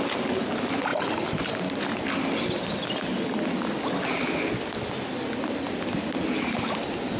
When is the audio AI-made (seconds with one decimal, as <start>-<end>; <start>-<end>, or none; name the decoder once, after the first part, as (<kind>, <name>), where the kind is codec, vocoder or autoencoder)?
none